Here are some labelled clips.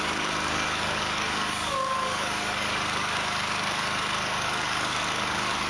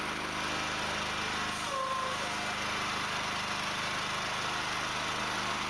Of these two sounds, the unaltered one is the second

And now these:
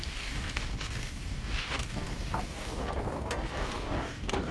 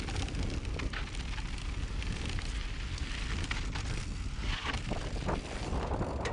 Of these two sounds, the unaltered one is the second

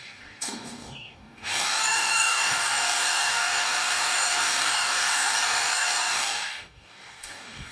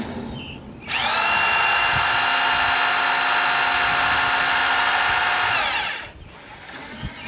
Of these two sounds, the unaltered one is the second